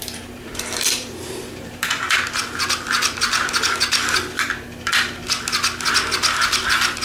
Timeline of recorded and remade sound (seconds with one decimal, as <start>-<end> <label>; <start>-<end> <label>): 0.0-2.2 remade; 2.2-7.0 recorded